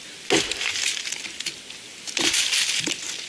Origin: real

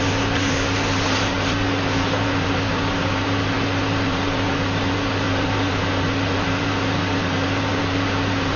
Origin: fake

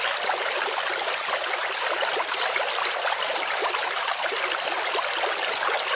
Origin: real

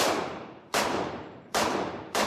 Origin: fake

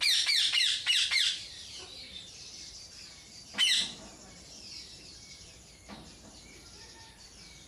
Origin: fake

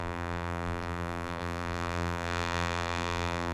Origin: fake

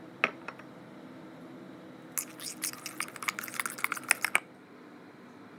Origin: real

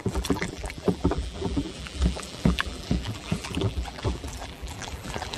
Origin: fake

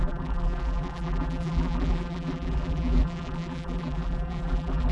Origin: fake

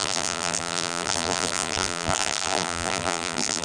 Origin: fake